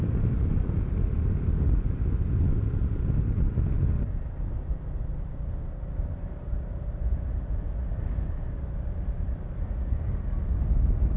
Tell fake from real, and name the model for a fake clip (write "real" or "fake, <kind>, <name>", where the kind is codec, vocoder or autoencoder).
real